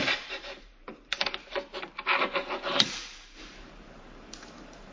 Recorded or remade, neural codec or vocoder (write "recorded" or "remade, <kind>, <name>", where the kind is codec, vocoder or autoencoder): remade, vocoder, BigVGAN v2